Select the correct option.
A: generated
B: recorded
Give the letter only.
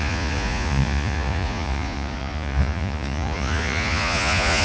A